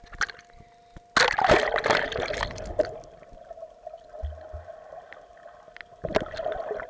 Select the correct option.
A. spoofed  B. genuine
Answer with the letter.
B